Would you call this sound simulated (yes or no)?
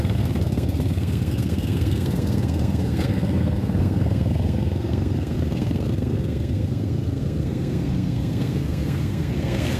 yes